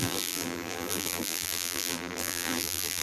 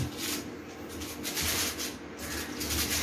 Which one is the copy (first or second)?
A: first